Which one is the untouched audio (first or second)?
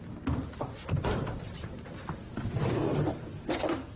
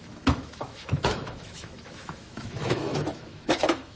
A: first